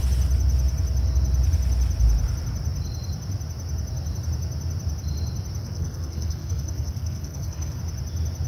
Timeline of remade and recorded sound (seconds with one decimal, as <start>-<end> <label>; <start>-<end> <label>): 0.0-5.6 recorded; 5.6-7.8 remade; 7.8-8.5 recorded